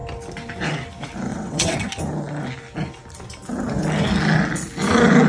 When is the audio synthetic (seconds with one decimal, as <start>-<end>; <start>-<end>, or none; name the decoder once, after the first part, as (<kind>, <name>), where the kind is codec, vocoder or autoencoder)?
1.3-1.9 (vocoder, WaveNeXt)